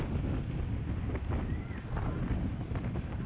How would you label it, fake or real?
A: real